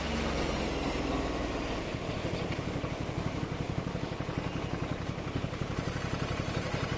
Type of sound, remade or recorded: recorded